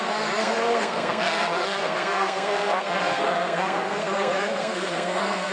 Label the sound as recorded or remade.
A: remade